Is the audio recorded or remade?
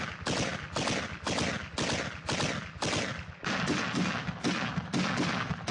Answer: recorded